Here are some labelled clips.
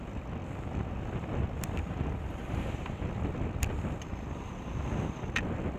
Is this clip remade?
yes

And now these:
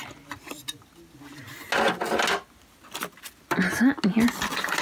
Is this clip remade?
no